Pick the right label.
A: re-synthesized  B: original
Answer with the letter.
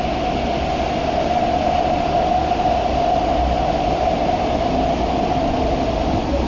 B